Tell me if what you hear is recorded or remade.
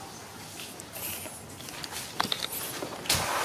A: recorded